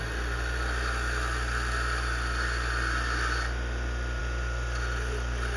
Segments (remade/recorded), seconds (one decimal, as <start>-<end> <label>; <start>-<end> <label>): 0.0-5.6 recorded